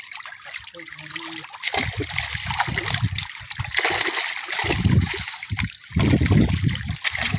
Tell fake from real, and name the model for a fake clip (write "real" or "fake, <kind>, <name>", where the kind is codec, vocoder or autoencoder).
real